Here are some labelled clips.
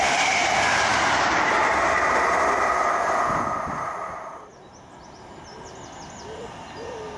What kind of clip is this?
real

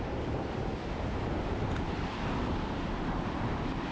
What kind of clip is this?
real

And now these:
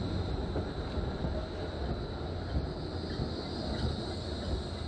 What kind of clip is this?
real